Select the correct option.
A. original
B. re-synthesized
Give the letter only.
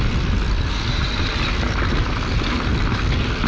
A